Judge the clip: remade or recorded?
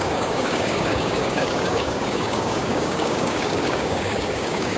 remade